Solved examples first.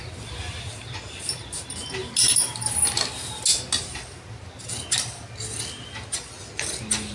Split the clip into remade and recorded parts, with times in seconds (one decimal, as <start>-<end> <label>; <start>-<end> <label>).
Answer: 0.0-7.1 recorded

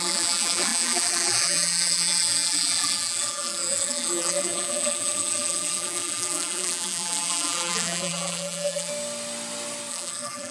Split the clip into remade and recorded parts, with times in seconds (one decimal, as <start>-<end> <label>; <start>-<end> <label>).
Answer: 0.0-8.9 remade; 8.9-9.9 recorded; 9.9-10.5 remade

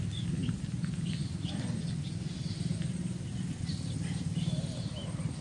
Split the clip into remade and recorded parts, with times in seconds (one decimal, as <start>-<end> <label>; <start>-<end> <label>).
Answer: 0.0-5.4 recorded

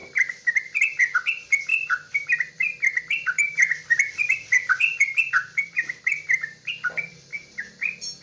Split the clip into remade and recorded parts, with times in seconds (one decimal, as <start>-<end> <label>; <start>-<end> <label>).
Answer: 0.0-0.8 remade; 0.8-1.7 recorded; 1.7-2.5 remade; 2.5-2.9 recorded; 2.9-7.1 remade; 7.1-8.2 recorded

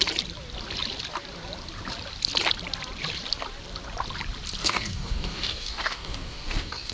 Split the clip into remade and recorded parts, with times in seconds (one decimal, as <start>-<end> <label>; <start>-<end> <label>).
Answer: 0.0-4.6 recorded; 4.6-6.9 remade